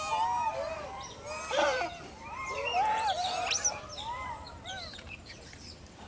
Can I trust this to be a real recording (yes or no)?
no